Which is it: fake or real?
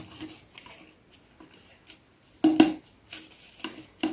real